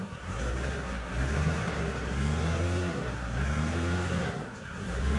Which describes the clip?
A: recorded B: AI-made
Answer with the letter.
B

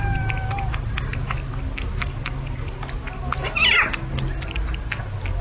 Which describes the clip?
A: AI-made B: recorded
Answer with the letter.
B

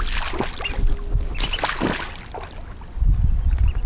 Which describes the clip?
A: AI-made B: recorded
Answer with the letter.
B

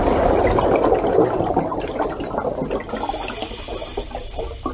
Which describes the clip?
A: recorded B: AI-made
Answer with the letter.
A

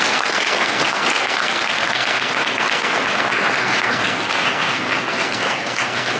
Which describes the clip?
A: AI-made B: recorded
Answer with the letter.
A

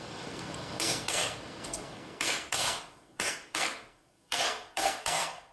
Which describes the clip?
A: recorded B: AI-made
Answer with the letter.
B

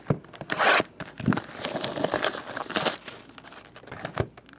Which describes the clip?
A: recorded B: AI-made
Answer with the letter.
A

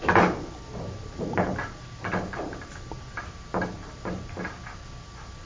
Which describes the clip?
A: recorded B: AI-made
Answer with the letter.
A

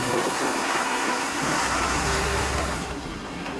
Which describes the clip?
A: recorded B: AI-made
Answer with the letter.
B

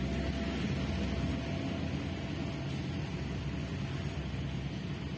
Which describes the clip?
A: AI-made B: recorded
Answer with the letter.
B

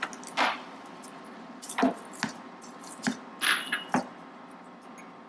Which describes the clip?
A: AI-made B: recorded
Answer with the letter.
B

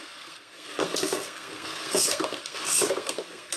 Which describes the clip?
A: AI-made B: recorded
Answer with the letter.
A